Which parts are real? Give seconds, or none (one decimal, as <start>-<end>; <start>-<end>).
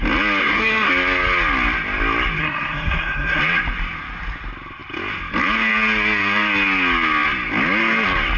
0.0-0.4; 0.9-2.4; 3.4-8.4